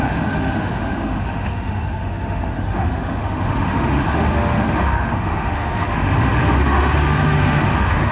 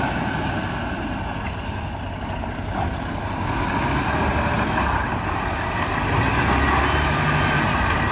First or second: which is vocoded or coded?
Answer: first